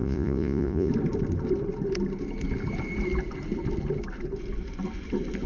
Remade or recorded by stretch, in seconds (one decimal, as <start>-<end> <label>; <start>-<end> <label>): 0.0-0.9 remade; 0.9-5.5 recorded